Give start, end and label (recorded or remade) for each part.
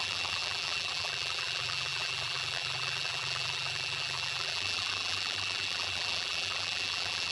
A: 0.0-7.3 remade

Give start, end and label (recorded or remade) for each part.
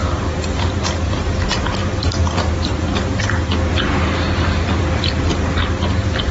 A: 0.0-1.1 remade; 1.1-1.8 recorded; 1.8-5.6 remade; 5.6-6.3 recorded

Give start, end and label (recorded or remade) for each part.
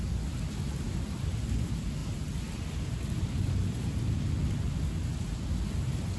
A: 0.0-6.2 recorded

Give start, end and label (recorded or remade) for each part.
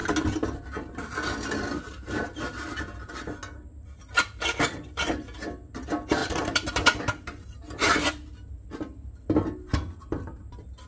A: 0.0-6.2 recorded; 6.2-8.5 remade; 8.5-10.9 recorded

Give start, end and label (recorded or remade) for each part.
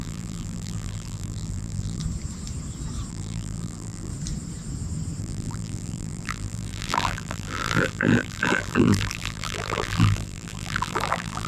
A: 0.0-2.0 remade; 2.0-3.1 recorded; 3.1-4.1 remade; 4.1-5.2 recorded; 5.2-11.5 remade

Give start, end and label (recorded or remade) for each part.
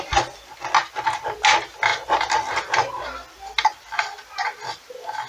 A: 0.0-5.3 recorded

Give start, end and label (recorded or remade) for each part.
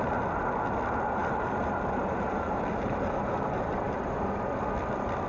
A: 0.0-1.2 recorded; 1.2-4.4 remade; 4.4-5.3 recorded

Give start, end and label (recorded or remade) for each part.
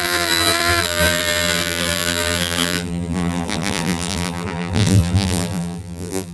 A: 0.0-6.3 remade